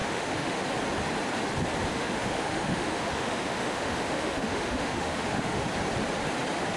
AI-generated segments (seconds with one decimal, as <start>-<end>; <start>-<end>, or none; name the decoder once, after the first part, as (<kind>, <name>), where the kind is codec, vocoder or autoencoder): 0.0-0.6 (autoencoder, DAC-VAE); 1.9-5.6